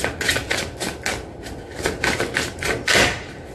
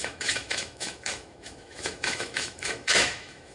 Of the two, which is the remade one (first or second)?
second